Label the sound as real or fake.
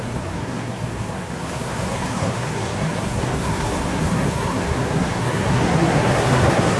fake